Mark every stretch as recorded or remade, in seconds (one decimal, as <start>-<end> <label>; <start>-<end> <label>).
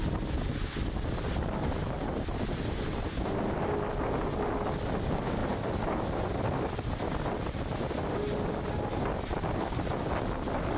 0.0-10.8 recorded